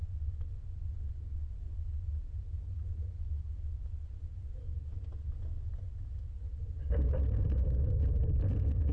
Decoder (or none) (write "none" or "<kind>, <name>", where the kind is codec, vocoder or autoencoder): none